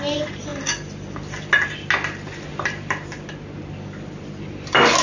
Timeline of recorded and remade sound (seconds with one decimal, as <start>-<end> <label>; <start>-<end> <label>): 0.0-5.0 recorded